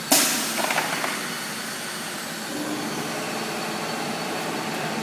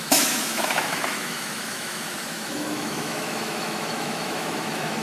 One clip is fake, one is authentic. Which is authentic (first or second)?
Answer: first